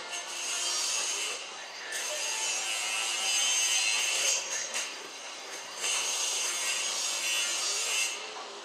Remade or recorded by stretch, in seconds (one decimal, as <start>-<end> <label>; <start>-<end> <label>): 0.0-1.3 recorded; 1.3-2.1 remade; 2.1-4.1 recorded; 4.1-6.5 remade; 6.5-8.6 recorded